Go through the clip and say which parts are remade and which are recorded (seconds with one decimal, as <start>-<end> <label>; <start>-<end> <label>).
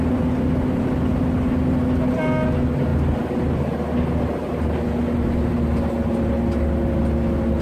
0.0-7.6 recorded